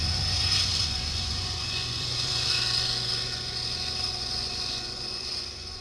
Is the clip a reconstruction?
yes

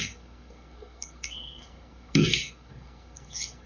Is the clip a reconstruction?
yes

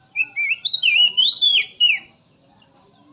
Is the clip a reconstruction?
yes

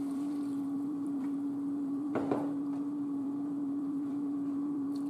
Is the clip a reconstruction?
yes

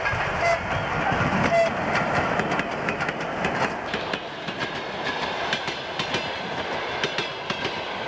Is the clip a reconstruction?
no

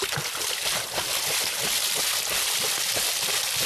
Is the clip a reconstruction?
no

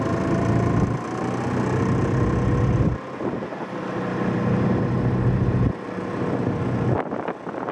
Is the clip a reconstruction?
no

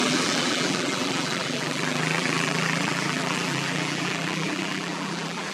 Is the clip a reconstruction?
yes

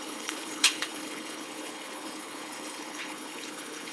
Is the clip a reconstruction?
yes